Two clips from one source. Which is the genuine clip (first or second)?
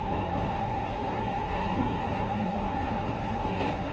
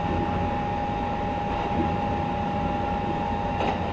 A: second